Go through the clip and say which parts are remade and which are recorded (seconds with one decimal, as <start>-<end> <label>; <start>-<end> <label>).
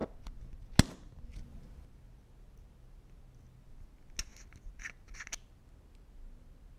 0.0-6.8 recorded